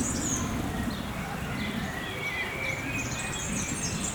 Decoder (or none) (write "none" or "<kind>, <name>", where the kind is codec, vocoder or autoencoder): none